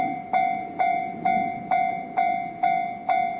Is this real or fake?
fake